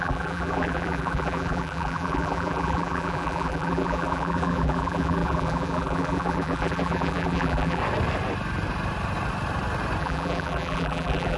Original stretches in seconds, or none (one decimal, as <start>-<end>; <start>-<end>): 7.8-10.0